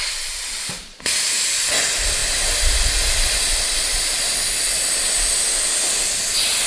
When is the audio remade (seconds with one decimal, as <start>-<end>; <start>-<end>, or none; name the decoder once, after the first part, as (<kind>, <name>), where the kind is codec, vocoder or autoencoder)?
none